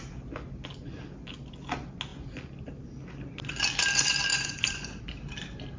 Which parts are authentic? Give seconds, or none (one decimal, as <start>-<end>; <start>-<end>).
0.0-4.3; 5.0-5.8